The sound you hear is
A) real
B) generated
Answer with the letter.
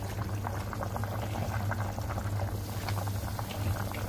A